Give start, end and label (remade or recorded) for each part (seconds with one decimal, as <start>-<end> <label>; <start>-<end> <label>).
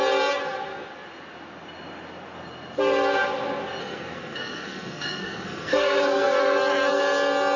0.0-3.8 recorded; 3.8-7.0 remade; 7.0-7.6 recorded